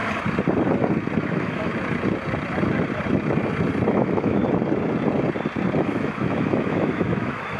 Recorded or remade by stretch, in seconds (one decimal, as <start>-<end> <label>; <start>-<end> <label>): 0.0-1.2 recorded; 1.2-1.7 remade; 1.7-3.9 recorded; 3.9-4.4 remade; 4.4-5.8 recorded; 5.8-7.6 remade